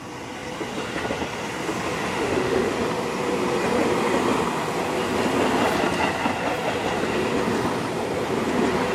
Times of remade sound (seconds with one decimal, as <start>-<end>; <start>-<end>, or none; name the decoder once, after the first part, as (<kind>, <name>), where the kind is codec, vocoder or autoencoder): 2.1-2.7 (autoencoder, DAC-VAE)